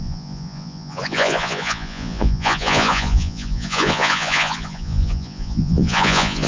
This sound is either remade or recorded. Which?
remade